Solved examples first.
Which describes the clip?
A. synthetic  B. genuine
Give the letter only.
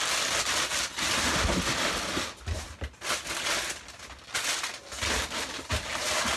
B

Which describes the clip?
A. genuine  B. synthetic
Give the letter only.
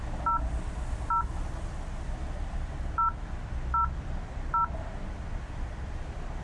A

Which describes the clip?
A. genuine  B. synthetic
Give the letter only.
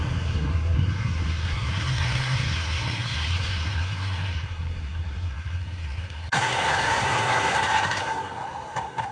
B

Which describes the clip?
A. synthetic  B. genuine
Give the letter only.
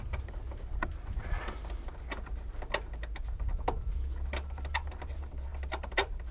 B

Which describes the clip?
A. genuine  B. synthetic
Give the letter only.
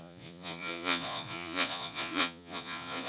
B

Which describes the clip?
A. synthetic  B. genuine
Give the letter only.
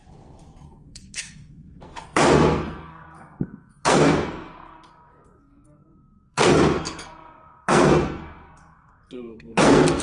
A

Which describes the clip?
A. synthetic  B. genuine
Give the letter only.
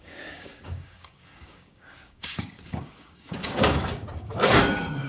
A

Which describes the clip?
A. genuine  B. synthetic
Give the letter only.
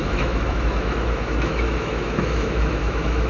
B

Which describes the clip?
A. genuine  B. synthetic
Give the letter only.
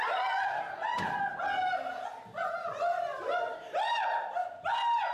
A